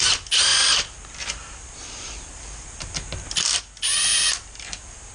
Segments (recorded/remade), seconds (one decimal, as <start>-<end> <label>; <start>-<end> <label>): 0.0-5.1 recorded